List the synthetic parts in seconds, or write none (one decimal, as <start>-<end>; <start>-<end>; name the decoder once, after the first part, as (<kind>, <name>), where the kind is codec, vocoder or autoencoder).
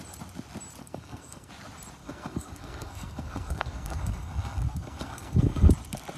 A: 0.8-1.5 (codec, SNAC); 2.0-5.7